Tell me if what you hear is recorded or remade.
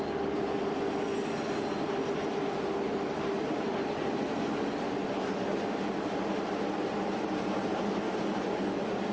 recorded